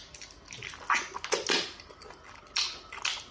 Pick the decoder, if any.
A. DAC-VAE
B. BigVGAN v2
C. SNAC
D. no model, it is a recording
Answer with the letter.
D